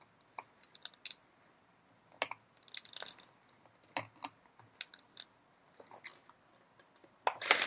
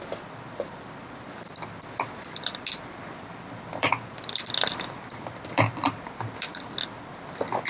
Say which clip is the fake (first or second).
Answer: second